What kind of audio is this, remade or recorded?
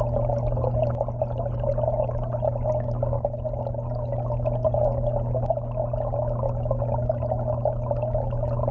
recorded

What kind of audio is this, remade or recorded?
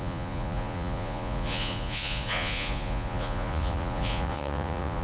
remade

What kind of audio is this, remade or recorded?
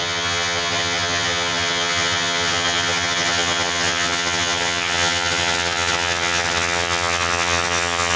remade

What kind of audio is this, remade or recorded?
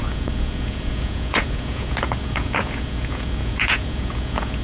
remade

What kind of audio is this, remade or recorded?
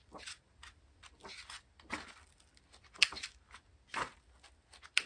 recorded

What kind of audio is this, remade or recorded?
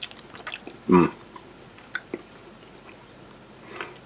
recorded